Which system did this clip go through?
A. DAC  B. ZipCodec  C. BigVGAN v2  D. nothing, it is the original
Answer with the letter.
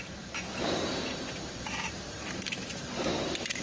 C